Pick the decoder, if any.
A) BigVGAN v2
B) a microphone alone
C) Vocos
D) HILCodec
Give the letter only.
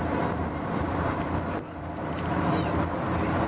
A